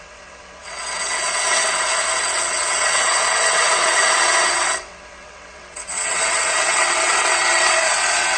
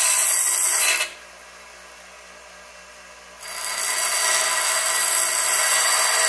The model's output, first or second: first